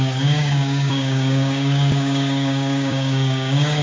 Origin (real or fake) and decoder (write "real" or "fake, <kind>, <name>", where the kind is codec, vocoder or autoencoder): fake, codec, DAC